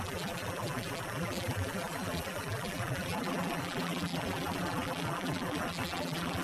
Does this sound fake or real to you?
fake